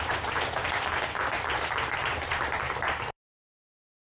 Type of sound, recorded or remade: remade